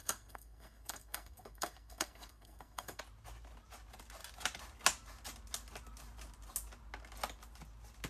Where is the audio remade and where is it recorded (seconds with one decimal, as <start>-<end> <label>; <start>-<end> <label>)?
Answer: 0.0-3.0 remade; 3.0-8.1 recorded